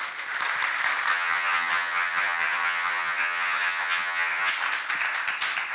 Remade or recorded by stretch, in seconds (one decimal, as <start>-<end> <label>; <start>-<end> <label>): 0.0-1.1 recorded; 1.1-4.5 remade; 4.5-5.7 recorded